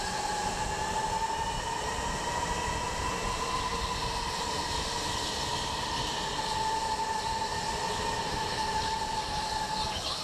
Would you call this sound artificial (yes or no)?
no